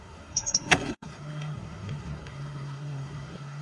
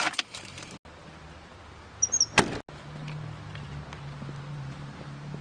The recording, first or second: second